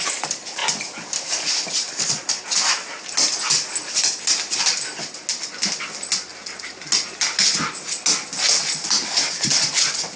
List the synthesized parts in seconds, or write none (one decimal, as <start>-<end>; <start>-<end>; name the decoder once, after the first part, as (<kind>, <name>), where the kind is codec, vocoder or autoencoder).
none